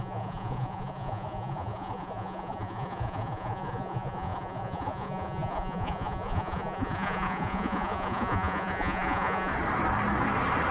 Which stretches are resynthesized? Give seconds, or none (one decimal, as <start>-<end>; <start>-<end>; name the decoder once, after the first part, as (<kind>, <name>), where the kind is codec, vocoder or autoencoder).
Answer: 0.0-9.5 (vocoder, Vocos)